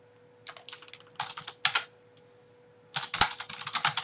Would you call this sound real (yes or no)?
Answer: yes